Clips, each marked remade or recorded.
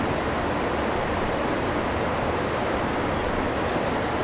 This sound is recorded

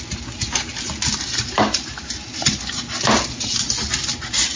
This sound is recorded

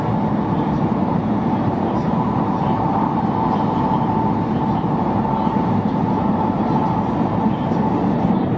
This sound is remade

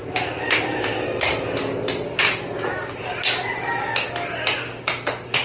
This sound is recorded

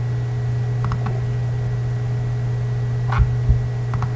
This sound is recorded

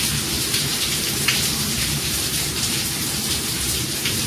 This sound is remade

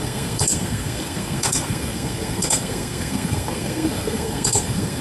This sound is remade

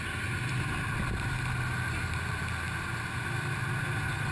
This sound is recorded